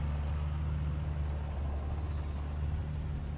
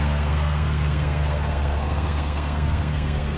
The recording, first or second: first